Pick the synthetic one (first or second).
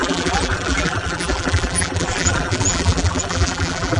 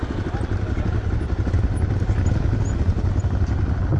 first